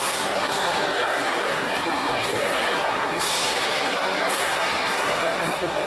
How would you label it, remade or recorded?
remade